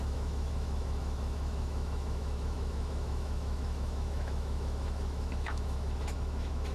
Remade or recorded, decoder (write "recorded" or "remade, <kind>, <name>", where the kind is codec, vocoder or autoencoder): remade, autoencoder, DAC-VAE